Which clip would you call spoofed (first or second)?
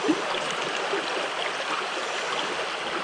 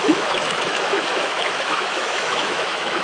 second